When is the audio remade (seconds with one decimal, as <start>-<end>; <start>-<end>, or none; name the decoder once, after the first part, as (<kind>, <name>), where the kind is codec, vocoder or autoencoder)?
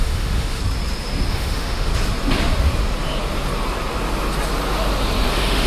0.0-0.6 (autoencoder, DAC-VAE); 1.3-1.9; 5.3-5.7